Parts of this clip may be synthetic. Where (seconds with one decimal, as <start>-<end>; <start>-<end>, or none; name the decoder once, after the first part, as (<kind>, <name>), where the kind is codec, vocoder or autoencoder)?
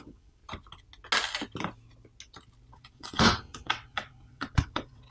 0.0-0.4 (vocoder, WaveNeXt); 2.7-5.1